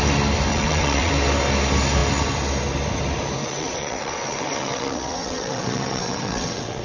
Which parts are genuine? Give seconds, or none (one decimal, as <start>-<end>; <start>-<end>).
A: 0.0-0.5; 1.1-3.4